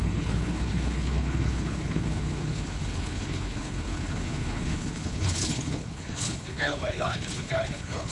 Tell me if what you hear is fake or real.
fake